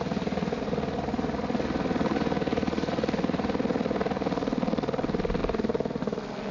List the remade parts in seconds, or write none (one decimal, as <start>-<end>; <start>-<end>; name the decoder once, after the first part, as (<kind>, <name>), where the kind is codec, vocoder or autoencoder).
none